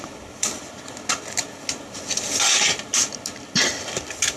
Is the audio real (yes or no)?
yes